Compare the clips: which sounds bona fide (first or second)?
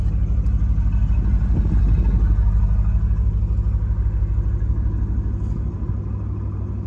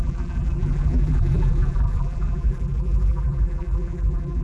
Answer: first